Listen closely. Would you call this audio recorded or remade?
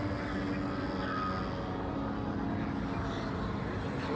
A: recorded